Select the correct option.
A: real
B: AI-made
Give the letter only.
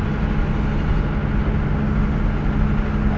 A